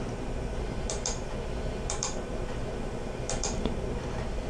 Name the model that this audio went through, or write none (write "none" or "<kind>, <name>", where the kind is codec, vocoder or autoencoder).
vocoder, BigVGAN v2